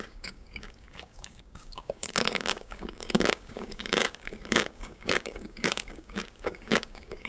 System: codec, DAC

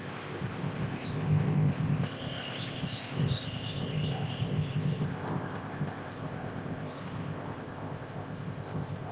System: codec, ZipCodec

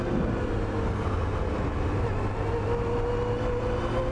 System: none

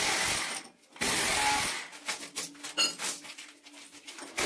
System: none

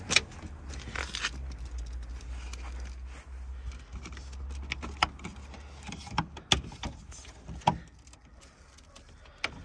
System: none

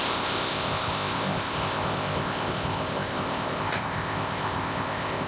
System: codec, ZipCodec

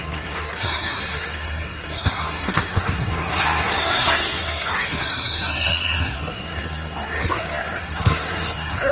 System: codec, SNAC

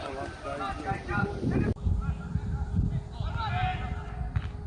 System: none